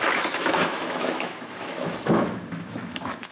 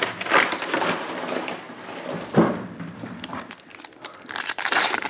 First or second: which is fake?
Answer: first